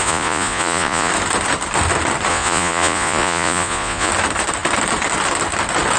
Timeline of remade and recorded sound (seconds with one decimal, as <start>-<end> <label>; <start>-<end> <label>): 0.0-1.1 remade; 1.1-2.3 recorded; 2.3-4.1 remade; 4.1-6.0 recorded